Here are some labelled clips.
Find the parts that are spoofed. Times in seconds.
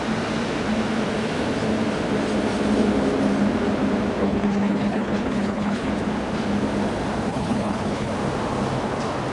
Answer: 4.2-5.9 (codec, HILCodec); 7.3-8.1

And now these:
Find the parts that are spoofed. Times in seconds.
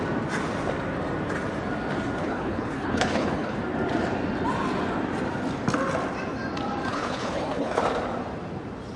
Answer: 2.2-3.6 (codec, HILCodec); 6.9-7.8